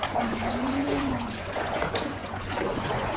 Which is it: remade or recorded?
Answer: remade